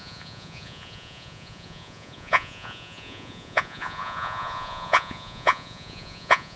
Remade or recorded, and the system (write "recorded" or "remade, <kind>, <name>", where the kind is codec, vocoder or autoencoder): remade, vocoder, Vocos